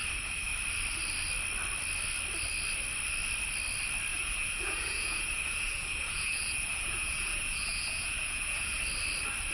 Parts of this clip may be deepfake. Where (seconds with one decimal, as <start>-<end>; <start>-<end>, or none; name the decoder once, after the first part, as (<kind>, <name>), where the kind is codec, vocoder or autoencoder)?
4.1-8.8 (vocoder, Vocos)